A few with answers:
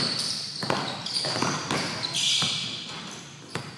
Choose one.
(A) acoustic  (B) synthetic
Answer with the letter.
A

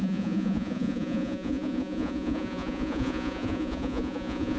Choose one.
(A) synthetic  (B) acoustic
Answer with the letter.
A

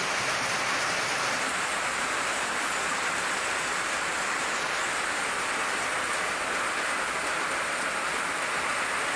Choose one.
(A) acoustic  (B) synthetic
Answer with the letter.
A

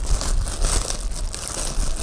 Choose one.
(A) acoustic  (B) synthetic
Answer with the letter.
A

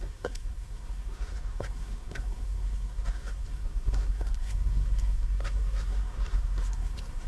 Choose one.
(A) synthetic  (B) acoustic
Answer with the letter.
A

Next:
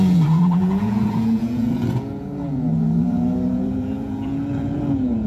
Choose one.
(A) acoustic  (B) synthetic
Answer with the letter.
B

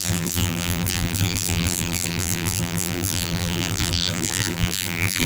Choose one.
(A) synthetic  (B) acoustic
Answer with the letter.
A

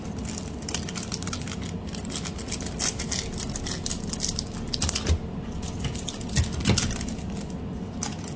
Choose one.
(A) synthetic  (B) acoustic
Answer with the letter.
B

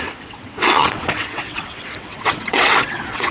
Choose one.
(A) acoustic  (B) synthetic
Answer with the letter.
B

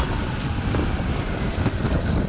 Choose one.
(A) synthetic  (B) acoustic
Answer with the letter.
B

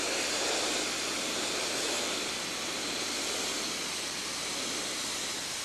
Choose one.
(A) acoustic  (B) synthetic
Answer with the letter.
A